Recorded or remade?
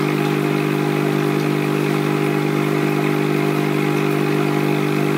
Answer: remade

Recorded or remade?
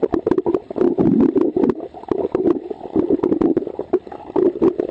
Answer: recorded